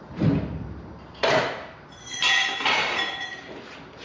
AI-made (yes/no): yes